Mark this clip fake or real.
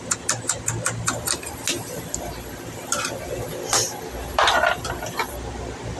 real